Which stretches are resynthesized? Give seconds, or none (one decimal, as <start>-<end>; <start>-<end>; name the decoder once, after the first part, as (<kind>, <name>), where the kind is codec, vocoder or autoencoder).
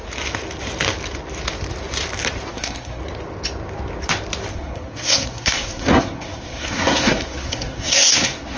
2.5-3.0 (codec, SNAC); 4.5-8.6